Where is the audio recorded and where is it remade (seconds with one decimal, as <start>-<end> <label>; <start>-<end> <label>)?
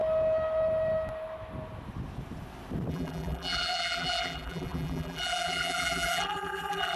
0.0-2.9 recorded; 2.9-7.0 remade